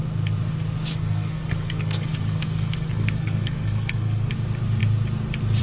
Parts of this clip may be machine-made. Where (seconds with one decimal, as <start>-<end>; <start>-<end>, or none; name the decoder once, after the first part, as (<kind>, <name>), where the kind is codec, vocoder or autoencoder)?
0.9-4.3 (codec, SNAC)